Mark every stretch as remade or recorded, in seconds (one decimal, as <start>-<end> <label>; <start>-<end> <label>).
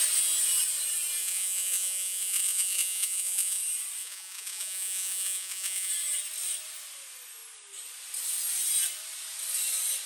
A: 0.0-1.2 recorded; 1.2-3.6 remade; 3.6-4.0 recorded; 4.0-5.9 remade; 5.9-10.1 recorded